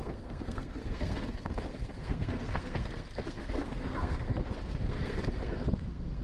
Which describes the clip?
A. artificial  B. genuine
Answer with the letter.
A